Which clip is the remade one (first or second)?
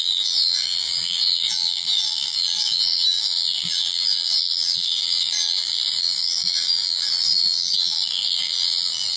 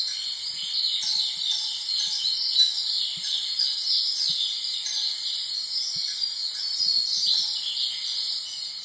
first